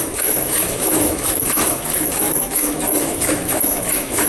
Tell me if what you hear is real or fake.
fake